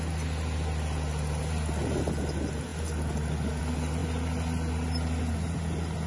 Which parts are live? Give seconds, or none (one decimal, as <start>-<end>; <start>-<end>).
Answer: 0.0-6.1